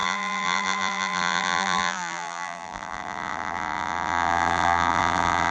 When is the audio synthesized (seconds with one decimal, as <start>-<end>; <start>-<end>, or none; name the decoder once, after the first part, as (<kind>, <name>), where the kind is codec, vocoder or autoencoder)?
0.0-5.5 (vocoder, BigVGAN v2)